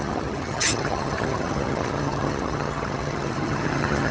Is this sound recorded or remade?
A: remade